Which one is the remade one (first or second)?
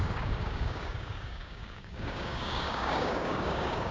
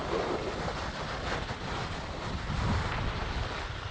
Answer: first